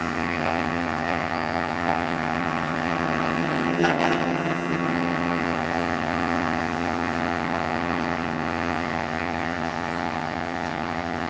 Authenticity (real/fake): fake